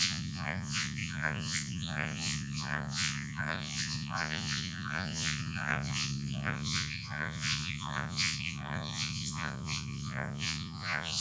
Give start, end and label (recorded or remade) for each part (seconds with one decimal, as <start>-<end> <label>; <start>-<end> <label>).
0.0-11.2 remade